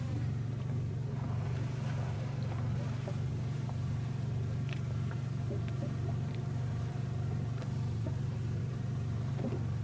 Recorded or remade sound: remade